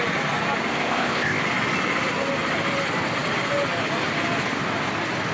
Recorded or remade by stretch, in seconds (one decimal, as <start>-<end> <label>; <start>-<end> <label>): 0.0-0.7 recorded; 0.7-1.4 remade; 1.4-5.3 recorded